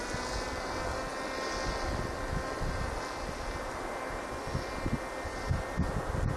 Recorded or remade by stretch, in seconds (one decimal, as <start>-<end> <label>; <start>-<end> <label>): 0.0-6.4 recorded